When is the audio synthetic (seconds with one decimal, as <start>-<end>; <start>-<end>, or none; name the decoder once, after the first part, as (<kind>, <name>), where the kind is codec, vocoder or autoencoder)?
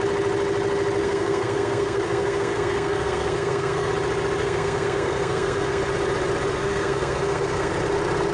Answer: 1.0-3.9 (codec, SNAC); 4.4-5.8; 6.6-7.7